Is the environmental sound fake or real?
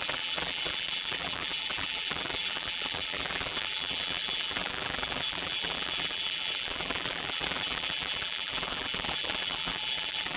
fake